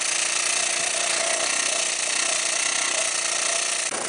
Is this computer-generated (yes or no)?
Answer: no